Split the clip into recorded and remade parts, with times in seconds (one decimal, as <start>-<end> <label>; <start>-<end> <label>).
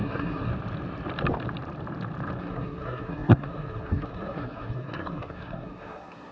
0.0-0.5 remade; 0.5-2.4 recorded; 2.4-6.3 remade